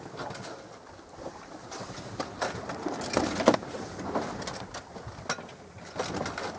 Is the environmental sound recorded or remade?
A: recorded